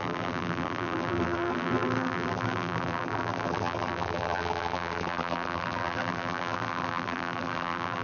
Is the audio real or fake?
fake